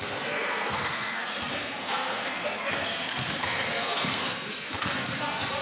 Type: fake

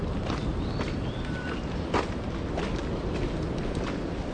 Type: real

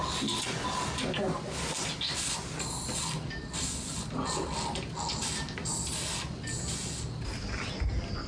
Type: real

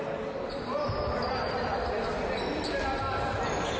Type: real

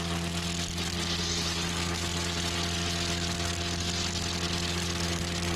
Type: real